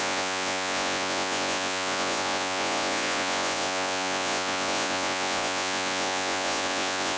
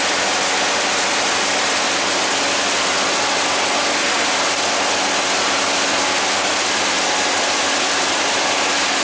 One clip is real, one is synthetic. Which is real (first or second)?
second